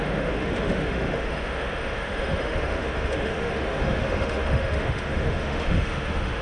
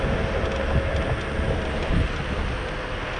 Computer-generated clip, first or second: first